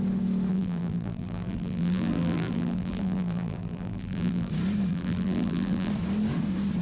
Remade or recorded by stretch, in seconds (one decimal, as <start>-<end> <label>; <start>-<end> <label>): 0.0-0.5 recorded; 0.5-4.5 remade; 4.5-4.9 recorded; 4.9-5.9 remade; 5.9-6.8 recorded